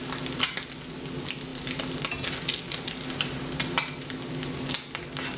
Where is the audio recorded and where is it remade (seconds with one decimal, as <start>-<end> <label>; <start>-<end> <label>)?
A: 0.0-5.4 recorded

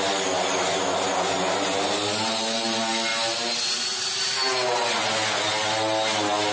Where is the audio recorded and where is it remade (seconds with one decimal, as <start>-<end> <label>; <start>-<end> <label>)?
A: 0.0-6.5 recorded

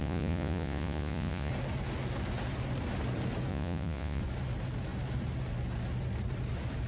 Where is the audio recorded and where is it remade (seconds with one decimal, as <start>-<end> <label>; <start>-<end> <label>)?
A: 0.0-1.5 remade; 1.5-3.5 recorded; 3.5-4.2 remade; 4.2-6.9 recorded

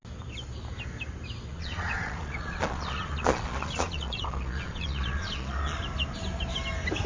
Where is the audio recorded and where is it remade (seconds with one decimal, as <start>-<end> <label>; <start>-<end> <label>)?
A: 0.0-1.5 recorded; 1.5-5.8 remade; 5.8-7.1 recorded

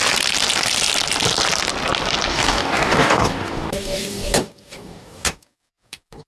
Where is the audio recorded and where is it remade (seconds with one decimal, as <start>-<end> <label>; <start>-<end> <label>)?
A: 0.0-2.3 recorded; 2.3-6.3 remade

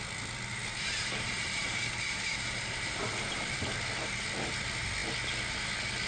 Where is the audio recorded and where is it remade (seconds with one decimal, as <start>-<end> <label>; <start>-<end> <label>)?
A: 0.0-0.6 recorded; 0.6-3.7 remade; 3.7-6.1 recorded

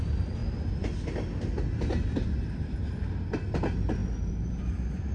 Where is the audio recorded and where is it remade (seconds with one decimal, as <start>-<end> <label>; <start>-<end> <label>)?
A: 0.0-5.1 recorded

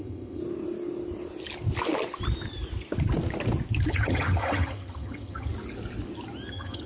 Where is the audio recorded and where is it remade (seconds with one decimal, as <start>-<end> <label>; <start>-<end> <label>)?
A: 0.0-0.4 remade; 0.4-3.9 recorded; 3.9-5.5 remade; 5.5-6.5 recorded; 6.5-6.9 remade